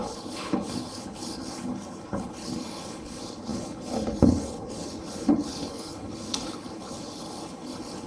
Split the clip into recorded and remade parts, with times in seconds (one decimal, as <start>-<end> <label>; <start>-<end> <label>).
0.0-8.1 remade